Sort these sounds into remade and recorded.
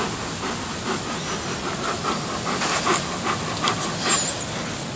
recorded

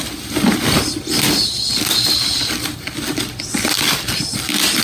recorded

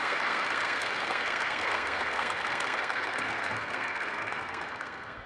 remade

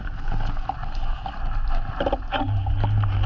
recorded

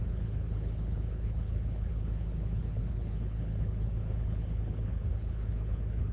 remade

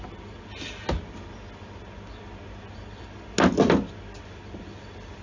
recorded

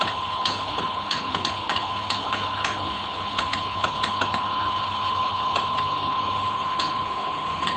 remade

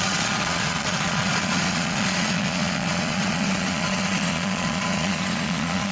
remade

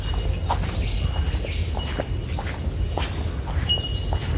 recorded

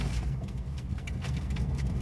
remade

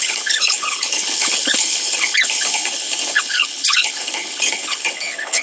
remade